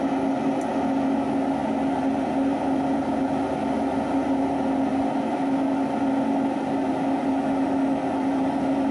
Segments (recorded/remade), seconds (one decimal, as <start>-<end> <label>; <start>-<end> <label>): 0.0-8.9 recorded